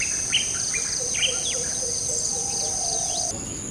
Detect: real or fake real